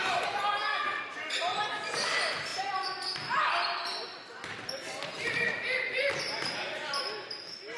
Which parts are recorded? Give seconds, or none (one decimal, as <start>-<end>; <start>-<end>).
0.0-0.9; 1.6-2.5; 6.2-7.8